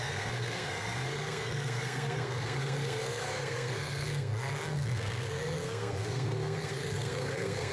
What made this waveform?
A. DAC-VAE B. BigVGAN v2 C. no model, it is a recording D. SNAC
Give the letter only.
D